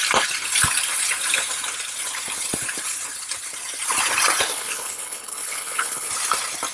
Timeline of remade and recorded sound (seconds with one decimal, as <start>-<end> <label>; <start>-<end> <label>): 0.0-4.5 recorded; 4.5-6.1 remade; 6.1-6.7 recorded